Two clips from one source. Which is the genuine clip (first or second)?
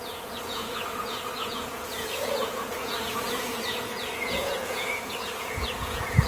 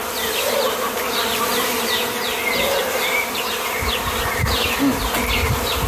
second